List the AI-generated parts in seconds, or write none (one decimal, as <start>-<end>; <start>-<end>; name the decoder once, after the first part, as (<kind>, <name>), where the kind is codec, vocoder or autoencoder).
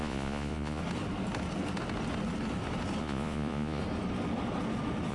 0.0-0.8 (vocoder, Vocos); 3.0-3.8